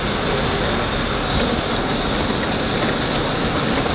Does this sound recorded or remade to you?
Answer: recorded